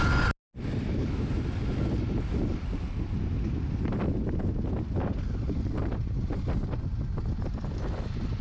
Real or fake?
real